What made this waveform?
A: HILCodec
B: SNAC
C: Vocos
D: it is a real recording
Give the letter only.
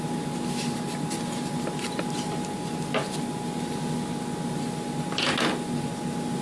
D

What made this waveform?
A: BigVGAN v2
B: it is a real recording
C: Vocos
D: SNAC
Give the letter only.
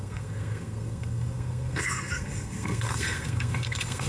D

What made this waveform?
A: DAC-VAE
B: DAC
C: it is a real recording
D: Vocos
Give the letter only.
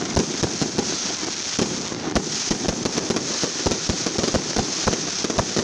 C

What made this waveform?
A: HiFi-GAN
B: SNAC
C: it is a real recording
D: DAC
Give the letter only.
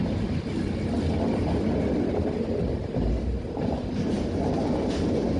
C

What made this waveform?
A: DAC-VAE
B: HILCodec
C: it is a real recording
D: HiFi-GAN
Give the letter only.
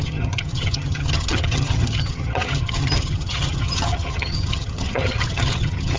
D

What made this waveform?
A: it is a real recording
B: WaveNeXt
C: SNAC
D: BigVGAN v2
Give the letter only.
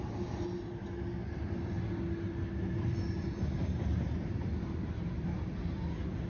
A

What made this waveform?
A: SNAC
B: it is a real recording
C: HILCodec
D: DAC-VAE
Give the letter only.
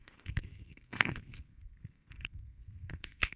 A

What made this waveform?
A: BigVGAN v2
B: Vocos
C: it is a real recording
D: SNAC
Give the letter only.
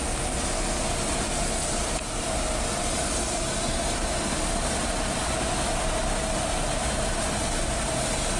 C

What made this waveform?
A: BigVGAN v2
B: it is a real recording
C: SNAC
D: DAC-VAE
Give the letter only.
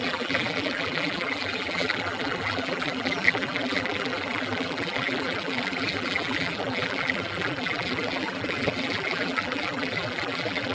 A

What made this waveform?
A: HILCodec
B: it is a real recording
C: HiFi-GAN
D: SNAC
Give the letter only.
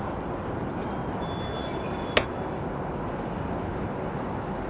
B